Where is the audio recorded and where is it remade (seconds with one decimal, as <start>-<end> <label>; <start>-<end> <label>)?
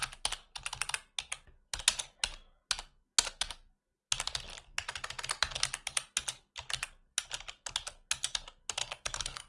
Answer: 0.0-8.8 recorded; 8.8-9.5 remade